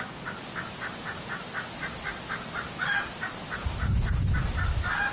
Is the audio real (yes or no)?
yes